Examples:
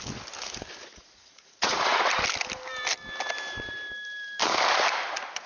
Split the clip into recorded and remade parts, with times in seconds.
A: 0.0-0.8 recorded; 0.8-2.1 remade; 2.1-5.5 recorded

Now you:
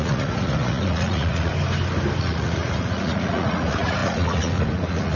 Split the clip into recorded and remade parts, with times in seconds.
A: 0.0-1.5 remade; 1.5-2.2 recorded; 2.2-5.2 remade

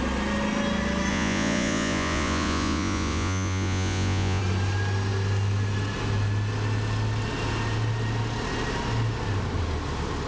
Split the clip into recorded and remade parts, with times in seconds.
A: 0.0-1.1 recorded; 1.1-4.4 remade; 4.4-10.3 recorded

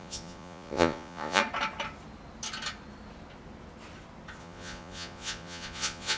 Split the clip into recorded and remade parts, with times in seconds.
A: 0.0-1.4 remade; 1.4-4.4 recorded; 4.4-6.2 remade

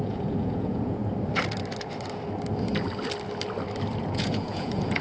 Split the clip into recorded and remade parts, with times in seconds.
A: 0.0-1.0 remade; 1.0-4.0 recorded; 4.0-5.0 remade